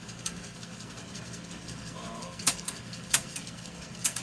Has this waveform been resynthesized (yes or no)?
yes